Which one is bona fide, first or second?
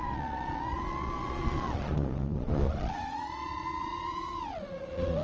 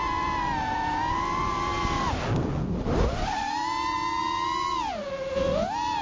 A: second